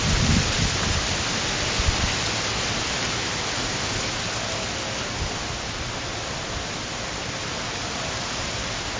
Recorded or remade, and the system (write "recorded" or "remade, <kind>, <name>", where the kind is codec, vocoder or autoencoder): recorded